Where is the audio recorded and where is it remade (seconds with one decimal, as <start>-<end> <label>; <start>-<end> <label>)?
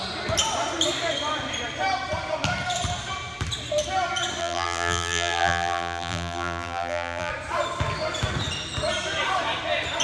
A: 0.0-4.4 recorded; 4.4-7.3 remade; 7.3-10.0 recorded